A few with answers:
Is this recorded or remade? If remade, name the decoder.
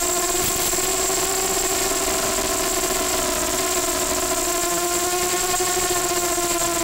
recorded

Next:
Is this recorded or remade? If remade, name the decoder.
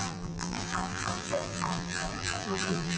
remade, vocoder, BigVGAN v2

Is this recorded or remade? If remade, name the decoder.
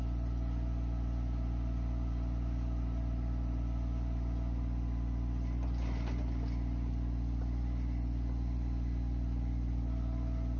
recorded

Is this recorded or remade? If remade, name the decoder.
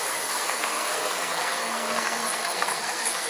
remade, codec, SNAC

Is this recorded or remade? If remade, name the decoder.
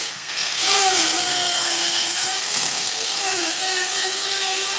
remade, codec, SNAC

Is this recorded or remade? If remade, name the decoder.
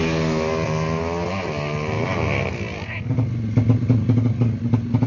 recorded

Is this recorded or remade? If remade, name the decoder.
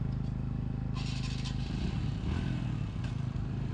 recorded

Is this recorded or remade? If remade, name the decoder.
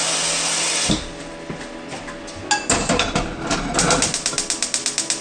recorded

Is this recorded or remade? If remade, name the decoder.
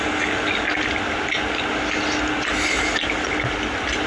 recorded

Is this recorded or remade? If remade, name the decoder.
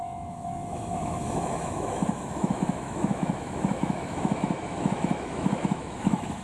remade, autoencoder, DAC-VAE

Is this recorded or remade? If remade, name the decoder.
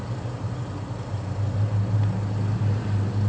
recorded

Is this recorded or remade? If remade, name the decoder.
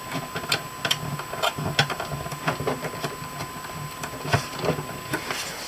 recorded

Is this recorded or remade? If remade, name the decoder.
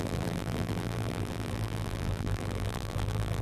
remade, vocoder, BigVGAN v2